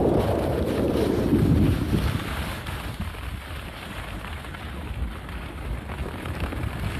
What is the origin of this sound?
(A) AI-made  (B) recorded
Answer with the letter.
B